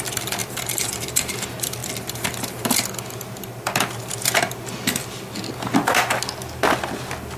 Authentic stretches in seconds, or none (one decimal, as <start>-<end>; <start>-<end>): 0.0-0.4; 1.3-7.4